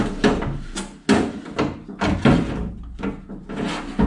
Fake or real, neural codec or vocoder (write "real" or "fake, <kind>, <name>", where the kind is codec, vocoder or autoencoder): real